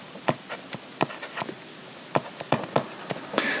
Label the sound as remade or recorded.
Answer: recorded